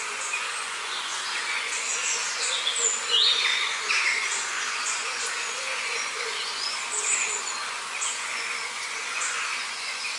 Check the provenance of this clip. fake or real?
fake